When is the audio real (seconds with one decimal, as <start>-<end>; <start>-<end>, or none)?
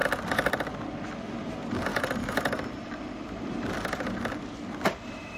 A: 0.7-1.9; 2.9-5.4